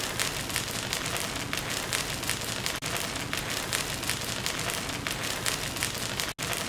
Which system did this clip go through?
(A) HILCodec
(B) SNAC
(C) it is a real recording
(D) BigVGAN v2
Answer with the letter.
C